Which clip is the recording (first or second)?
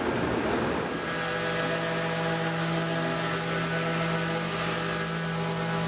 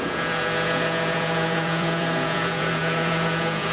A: first